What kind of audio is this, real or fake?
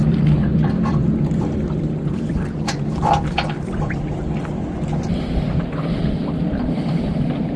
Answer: fake